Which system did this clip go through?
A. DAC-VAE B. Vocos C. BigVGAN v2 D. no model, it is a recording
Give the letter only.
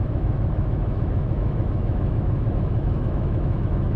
A